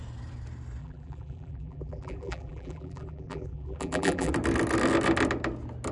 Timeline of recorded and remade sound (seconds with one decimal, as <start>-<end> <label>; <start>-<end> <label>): 0.0-0.8 recorded; 0.8-4.3 remade; 4.3-5.9 recorded